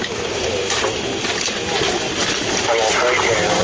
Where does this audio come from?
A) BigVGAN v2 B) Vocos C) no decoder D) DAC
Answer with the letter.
C